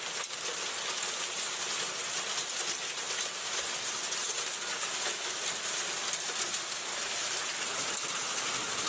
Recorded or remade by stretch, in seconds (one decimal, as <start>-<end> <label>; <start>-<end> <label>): 0.0-8.9 recorded